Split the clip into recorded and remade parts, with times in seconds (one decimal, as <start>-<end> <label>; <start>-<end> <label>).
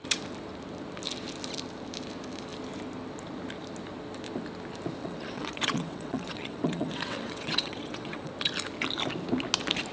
0.0-5.0 recorded; 5.0-8.3 remade; 8.3-9.9 recorded